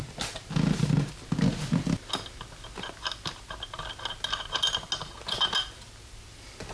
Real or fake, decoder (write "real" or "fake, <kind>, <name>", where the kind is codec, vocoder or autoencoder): real